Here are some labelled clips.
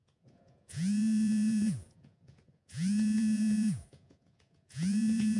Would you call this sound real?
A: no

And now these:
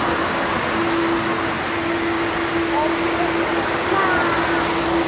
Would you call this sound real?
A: yes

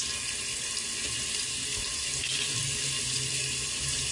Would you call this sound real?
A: yes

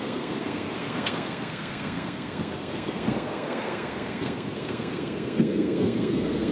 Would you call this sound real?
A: no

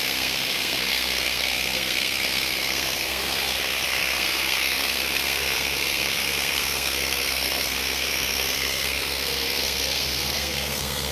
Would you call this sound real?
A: no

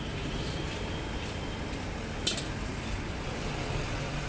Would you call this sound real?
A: yes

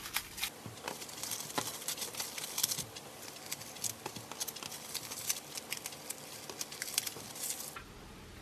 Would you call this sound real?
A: yes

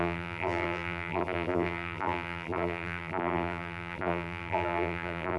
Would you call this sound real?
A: no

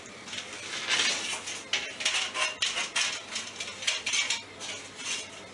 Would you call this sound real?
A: yes